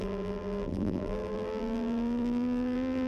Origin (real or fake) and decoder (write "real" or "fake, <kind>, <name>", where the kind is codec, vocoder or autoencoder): fake, vocoder, BigVGAN v2